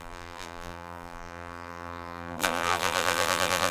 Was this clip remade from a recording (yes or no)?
yes